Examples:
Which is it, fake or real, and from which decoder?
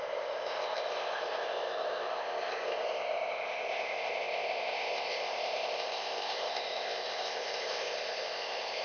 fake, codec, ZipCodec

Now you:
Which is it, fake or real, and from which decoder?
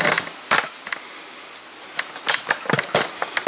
real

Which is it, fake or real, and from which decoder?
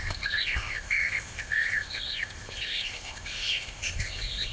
fake, codec, ZipCodec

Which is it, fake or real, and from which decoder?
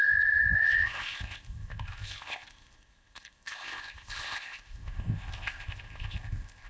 fake, codec, ZipCodec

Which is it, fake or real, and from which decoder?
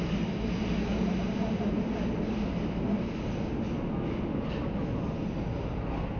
real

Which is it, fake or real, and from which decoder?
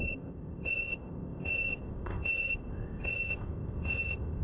fake, codec, ZipCodec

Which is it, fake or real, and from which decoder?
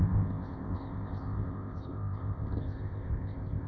fake, codec, ZipCodec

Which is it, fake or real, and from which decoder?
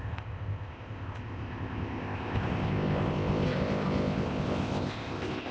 fake, codec, ZipCodec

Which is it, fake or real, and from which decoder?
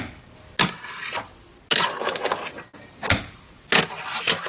real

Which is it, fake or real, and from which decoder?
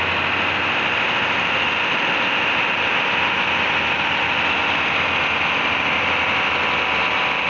real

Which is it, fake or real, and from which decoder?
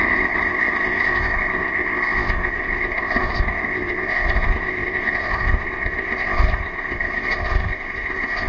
fake, codec, ZipCodec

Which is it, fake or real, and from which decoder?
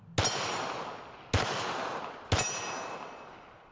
real